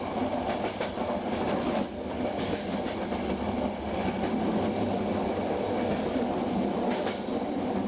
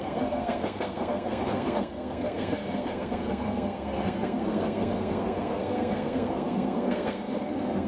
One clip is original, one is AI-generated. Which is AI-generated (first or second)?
second